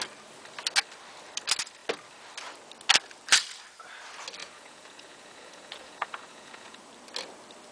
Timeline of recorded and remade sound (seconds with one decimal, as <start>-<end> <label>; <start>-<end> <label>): 0.0-4.4 recorded; 4.4-6.8 remade; 6.8-7.7 recorded